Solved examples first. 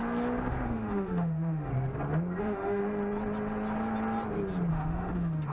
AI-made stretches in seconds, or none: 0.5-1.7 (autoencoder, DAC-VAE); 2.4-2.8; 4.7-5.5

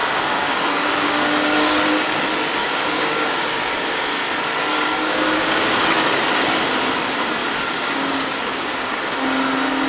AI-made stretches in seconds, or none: 0.0-2.2 (codec, DAC); 2.6-4.2; 4.7-6.2; 7.4-9.0

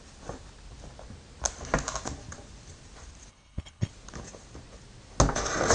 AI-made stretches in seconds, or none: 3.3-3.9 (codec, HILCodec)